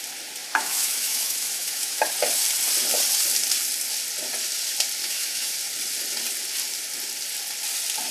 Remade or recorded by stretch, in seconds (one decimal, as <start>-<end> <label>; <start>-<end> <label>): 0.0-0.4 recorded; 0.4-2.1 remade; 2.1-5.0 recorded; 5.0-5.5 remade; 5.5-8.1 recorded